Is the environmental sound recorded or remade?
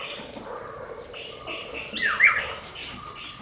recorded